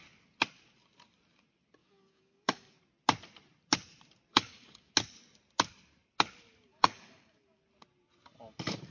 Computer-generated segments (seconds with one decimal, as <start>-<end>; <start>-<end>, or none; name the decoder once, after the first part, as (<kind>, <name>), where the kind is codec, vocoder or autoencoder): 1.8-2.8 (codec, DAC); 4.3-4.9; 6.7-7.6